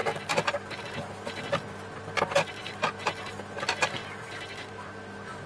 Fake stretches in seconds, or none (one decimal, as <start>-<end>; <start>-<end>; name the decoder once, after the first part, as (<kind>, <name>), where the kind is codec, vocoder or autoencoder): none